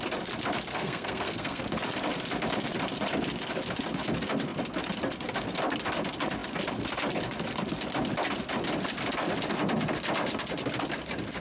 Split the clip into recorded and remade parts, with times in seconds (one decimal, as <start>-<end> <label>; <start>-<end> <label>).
0.0-0.7 recorded; 0.7-1.6 remade; 1.6-11.4 recorded